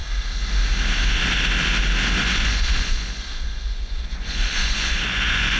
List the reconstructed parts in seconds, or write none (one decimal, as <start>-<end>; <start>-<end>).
2.2-5.6